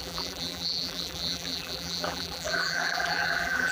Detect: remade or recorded remade